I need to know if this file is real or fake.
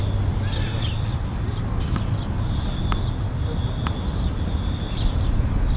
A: real